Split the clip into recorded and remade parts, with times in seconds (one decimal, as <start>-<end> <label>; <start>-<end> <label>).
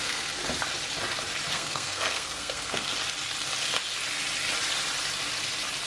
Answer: 0.0-0.4 remade; 0.4-1.5 recorded; 1.5-2.9 remade; 2.9-5.9 recorded